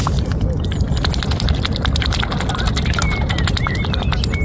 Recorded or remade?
recorded